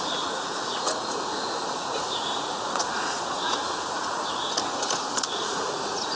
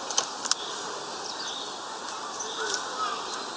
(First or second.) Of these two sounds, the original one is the second